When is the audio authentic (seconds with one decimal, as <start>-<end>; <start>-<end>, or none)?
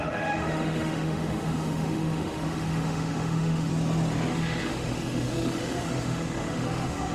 3.7-4.3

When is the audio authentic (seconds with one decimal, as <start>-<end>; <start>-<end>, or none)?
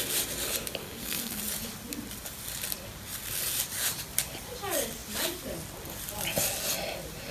0.0-0.8; 1.4-7.3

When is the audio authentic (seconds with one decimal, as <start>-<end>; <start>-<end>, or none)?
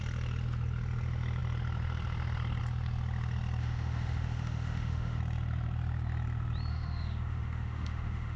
0.0-3.6; 5.2-6.7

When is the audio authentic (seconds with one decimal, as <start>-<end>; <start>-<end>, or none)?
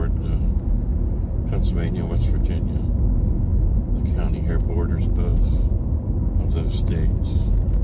0.0-3.5; 4.5-5.3; 6.1-7.8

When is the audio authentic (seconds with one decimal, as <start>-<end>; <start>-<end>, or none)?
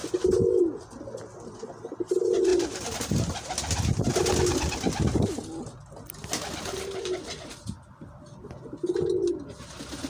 0.0-10.1